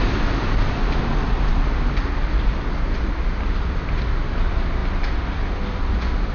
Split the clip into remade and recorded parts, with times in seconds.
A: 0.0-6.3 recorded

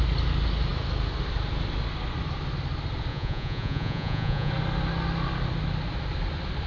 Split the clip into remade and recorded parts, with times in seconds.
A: 0.0-3.1 recorded; 3.1-4.5 remade; 4.5-6.7 recorded

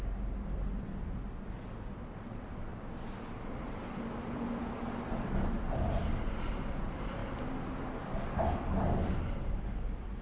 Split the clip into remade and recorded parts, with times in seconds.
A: 0.0-10.2 recorded

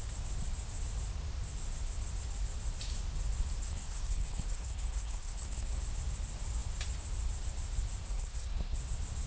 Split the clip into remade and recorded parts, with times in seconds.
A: 0.0-3.6 recorded; 3.6-5.8 remade; 5.8-8.0 recorded; 8.0-8.8 remade; 8.8-9.3 recorded

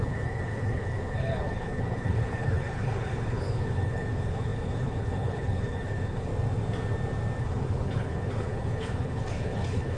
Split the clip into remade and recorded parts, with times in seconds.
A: 0.0-6.3 remade; 6.3-7.4 recorded; 7.4-10.0 remade

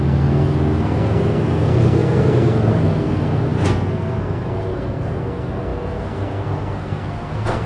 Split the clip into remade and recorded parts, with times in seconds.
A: 0.0-7.7 remade